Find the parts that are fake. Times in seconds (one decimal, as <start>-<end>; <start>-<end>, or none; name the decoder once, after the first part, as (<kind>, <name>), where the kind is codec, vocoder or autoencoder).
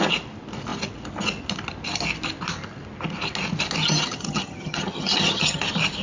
3.8-5.6 (vocoder, HiFi-GAN)